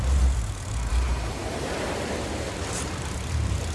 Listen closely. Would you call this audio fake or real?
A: fake